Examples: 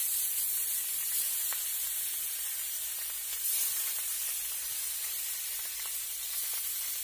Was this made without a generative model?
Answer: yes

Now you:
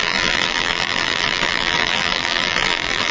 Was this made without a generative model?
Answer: no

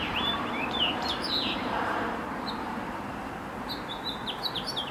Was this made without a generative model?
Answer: no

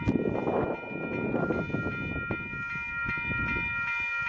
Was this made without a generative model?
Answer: yes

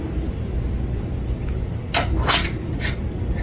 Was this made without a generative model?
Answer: yes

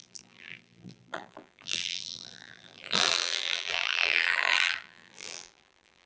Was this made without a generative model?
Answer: no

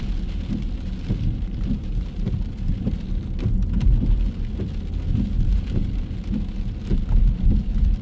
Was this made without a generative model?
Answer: yes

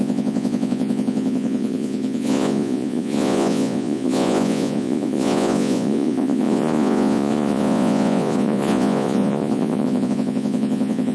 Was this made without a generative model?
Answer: no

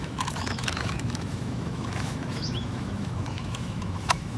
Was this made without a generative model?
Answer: no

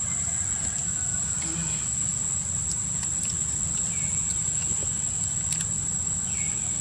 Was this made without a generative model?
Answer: yes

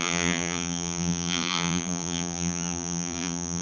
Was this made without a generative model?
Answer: no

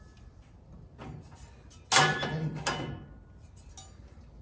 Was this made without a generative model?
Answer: yes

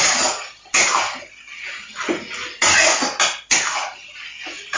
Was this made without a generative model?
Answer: yes